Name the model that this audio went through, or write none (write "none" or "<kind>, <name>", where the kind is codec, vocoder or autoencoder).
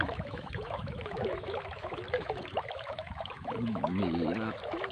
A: autoencoder, DAC-VAE